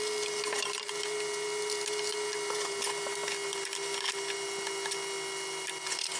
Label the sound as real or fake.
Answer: real